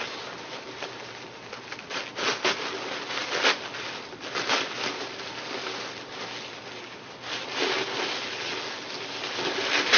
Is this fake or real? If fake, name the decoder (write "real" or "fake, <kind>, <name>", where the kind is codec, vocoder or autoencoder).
real